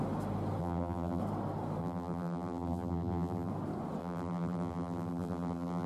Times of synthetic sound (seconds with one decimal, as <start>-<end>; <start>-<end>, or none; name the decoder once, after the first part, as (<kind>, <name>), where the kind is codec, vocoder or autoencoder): 0.6-1.2 (vocoder, BigVGAN v2); 1.8-3.5; 4.0-5.9